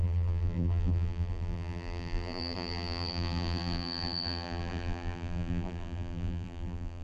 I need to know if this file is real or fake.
fake